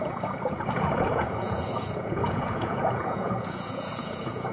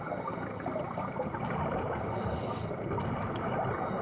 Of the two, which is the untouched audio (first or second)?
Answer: second